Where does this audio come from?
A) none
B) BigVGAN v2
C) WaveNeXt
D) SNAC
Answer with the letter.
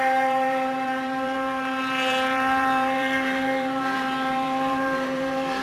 B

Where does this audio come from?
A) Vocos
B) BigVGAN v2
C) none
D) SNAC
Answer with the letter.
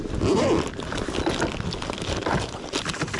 C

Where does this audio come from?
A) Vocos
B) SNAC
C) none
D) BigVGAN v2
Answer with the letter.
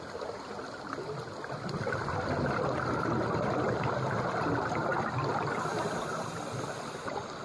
C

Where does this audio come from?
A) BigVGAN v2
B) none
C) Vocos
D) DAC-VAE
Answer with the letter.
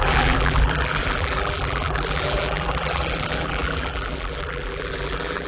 A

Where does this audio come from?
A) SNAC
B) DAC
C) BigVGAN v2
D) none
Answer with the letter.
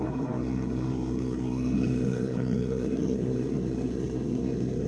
A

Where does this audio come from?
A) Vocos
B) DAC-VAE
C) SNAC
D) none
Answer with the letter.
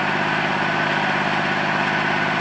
D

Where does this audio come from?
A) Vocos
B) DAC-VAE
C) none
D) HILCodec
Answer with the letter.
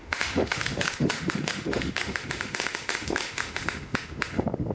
B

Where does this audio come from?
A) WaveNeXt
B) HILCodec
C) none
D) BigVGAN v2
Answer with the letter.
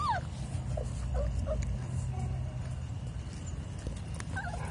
C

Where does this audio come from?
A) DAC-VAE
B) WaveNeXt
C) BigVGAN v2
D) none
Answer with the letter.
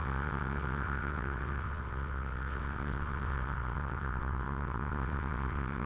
B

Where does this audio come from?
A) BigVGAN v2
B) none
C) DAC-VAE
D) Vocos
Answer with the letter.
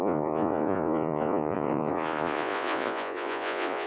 D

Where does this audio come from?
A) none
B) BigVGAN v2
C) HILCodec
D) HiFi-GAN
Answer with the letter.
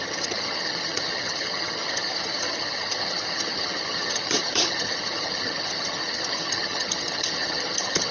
D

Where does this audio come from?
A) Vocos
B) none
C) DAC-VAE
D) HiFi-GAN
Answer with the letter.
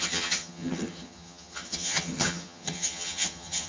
D